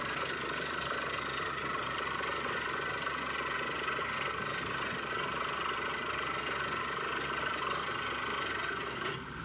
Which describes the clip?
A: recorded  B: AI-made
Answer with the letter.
A